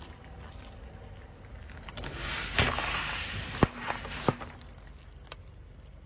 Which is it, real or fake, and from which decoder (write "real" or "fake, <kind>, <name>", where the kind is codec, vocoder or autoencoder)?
real